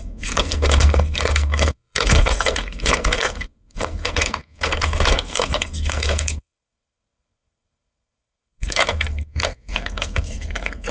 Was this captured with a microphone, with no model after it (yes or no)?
no